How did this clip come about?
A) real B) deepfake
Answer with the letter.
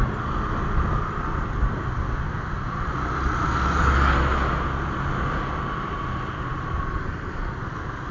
A